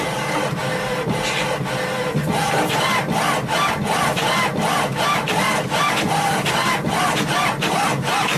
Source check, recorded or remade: recorded